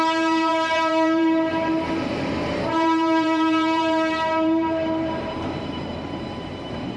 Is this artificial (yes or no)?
yes